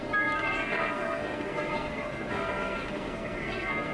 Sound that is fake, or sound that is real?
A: fake